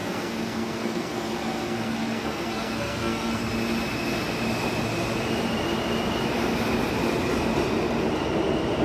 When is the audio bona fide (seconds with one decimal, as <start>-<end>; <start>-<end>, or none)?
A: 3.4-8.8